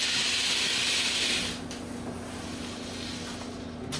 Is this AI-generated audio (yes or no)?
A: no